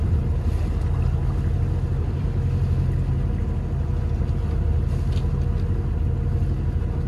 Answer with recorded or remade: recorded